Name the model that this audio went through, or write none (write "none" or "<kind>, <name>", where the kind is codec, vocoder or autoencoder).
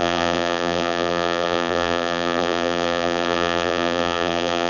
vocoder, BigVGAN v2